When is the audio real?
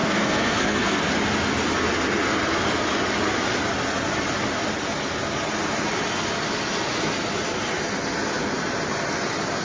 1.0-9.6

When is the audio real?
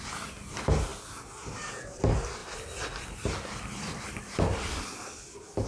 0.0-5.7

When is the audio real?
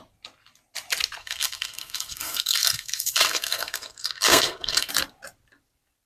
0.0-1.2; 4.9-6.1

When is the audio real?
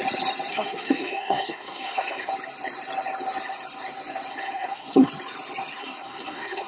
0.0-0.5; 2.3-4.3; 5.1-5.8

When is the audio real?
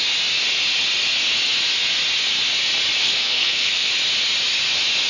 0.0-3.0; 3.9-5.1